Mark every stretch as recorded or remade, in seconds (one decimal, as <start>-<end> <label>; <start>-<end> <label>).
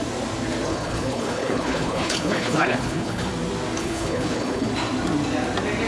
0.0-0.7 recorded; 0.7-3.3 remade; 3.3-3.8 recorded; 3.8-4.7 remade; 4.7-5.9 recorded